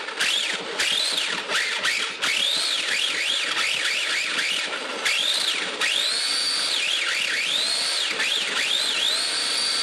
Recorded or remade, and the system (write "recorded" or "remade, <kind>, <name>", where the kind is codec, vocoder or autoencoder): recorded